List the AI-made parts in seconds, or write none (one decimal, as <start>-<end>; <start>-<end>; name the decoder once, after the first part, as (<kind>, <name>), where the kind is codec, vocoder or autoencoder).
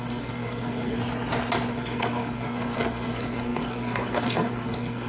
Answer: 0.0-1.0 (codec, SNAC); 1.7-5.1